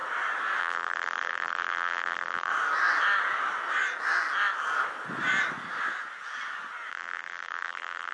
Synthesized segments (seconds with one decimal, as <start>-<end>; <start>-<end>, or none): 0.6-2.5; 6.9-8.1